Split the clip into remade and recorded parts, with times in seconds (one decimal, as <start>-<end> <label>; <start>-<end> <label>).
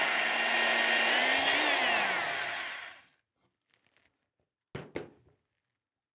0.0-6.1 recorded